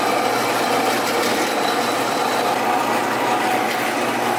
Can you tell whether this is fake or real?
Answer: real